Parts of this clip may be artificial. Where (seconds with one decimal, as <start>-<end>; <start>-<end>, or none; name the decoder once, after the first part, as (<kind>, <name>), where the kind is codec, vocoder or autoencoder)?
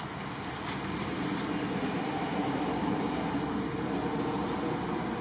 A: none